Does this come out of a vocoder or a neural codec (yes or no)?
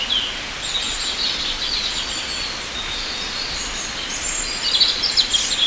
no